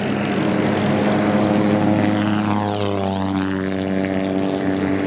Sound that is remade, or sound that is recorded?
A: recorded